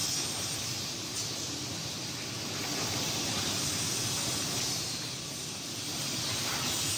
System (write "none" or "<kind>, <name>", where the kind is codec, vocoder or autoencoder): none